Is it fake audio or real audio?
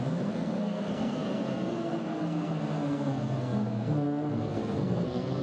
fake